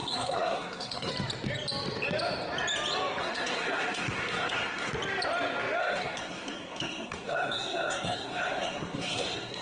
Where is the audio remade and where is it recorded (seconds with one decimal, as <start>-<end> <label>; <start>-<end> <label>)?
0.0-1.1 remade; 1.1-3.2 recorded; 3.2-4.9 remade; 4.9-5.8 recorded; 5.8-9.6 remade